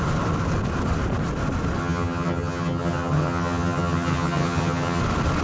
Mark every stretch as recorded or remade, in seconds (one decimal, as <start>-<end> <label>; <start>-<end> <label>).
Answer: 0.0-1.8 recorded; 1.8-5.0 remade; 5.0-5.4 recorded